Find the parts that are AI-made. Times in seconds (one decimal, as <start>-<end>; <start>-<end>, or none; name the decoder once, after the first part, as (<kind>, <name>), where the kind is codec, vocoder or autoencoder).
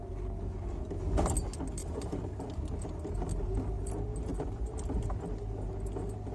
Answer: 1.8-2.3 (vocoder, BigVGAN v2); 3.3-3.9; 4.3-5.0